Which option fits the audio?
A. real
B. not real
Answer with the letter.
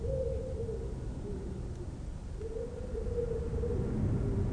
A